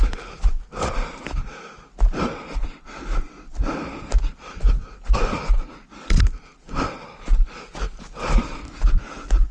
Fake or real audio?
real